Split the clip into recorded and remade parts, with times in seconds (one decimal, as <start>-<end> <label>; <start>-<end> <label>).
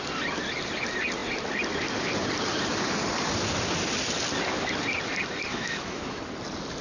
0.0-5.5 recorded; 5.5-6.2 remade; 6.2-6.8 recorded